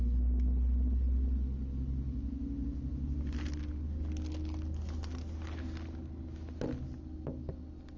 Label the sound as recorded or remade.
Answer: recorded